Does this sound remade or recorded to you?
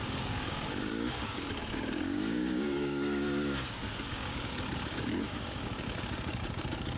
remade